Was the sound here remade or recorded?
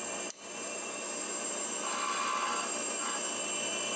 recorded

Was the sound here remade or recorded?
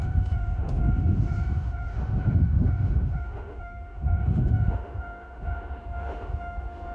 remade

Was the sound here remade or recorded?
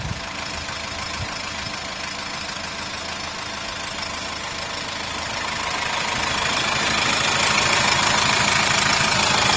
recorded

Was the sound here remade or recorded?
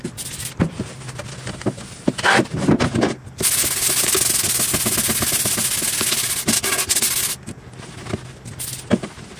recorded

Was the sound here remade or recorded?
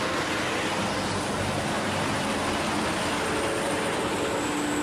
recorded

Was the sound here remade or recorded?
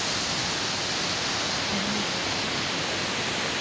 recorded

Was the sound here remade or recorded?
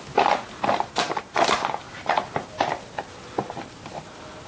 recorded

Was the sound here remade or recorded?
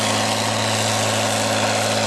recorded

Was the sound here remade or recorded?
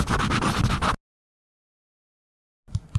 recorded